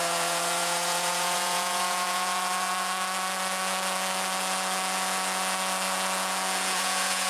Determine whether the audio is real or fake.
fake